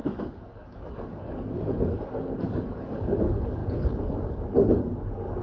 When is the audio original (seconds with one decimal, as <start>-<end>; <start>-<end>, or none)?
none